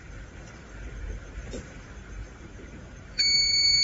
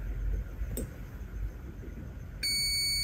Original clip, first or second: second